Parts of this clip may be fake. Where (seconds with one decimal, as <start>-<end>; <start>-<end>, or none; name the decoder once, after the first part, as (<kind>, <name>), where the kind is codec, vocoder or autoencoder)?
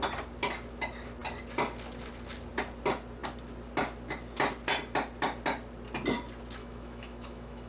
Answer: 6.6-7.7 (autoencoder, DAC-VAE)